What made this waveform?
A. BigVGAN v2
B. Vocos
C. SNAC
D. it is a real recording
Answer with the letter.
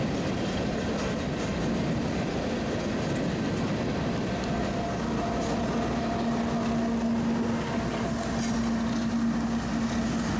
D